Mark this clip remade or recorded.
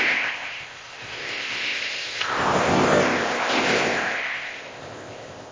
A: remade